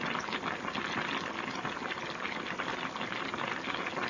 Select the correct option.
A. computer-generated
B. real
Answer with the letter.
B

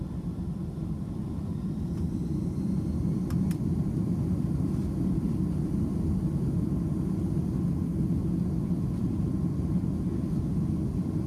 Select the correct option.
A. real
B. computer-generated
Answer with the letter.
A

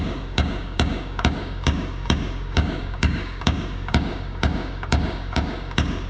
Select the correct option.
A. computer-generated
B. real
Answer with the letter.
A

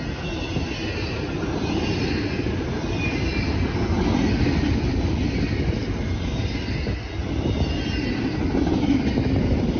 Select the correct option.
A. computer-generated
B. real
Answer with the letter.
B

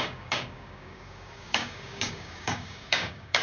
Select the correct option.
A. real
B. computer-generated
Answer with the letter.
B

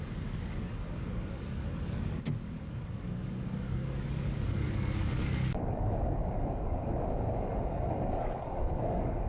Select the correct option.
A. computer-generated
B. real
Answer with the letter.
A